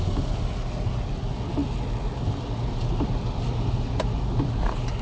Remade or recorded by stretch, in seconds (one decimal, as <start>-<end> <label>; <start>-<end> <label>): 0.0-5.0 recorded